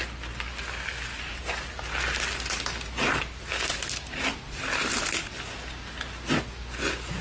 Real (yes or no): yes